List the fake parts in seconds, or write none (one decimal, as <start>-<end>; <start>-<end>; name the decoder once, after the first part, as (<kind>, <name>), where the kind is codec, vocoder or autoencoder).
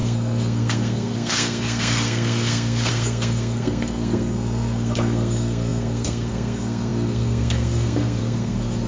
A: 0.0-8.9 (codec, SNAC)